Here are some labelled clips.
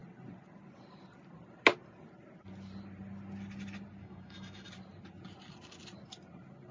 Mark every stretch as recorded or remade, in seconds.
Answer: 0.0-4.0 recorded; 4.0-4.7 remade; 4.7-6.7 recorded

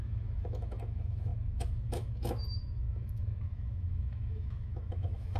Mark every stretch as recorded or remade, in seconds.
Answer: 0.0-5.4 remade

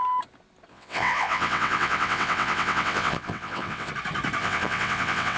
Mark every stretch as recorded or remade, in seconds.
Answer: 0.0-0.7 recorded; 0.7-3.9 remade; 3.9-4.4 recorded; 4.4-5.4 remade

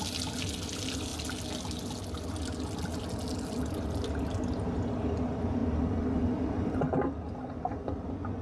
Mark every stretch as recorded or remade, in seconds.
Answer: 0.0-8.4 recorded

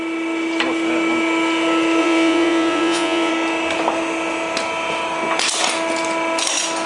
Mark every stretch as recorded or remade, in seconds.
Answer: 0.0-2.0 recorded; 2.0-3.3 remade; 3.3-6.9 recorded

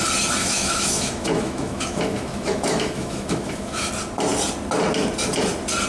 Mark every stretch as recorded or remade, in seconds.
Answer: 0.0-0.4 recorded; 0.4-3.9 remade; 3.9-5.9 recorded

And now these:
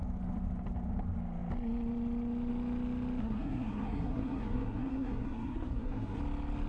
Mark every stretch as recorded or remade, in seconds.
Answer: 0.0-3.2 recorded; 3.2-6.2 remade; 6.2-6.7 recorded